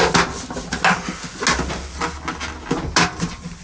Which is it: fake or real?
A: real